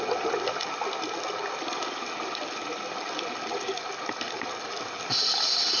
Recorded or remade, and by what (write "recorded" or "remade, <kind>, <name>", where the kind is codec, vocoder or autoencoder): recorded